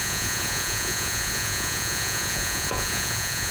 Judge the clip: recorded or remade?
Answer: remade